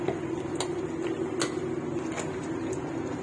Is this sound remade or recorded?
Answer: recorded